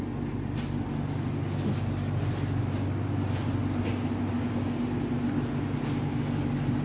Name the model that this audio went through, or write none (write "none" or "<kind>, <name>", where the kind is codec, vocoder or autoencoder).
none